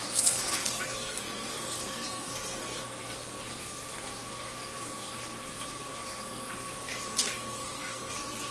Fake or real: fake